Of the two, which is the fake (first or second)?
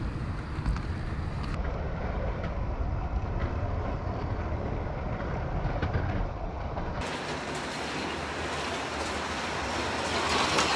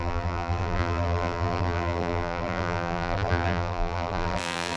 second